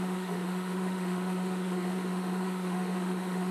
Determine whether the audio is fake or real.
fake